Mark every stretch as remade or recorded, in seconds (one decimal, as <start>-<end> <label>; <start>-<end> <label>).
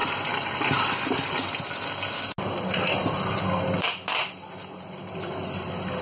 0.0-1.2 remade; 1.2-3.0 recorded; 3.0-4.5 remade; 4.5-6.0 recorded